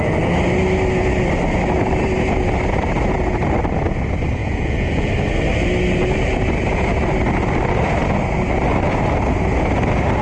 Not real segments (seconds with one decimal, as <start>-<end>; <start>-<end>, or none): 4.4-5.1